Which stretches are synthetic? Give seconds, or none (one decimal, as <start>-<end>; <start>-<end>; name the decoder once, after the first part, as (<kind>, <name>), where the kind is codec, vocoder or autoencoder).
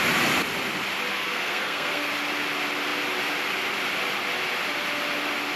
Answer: 1.1-2.1 (codec, SNAC)